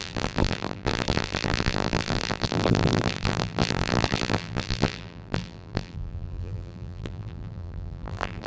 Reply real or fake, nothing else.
fake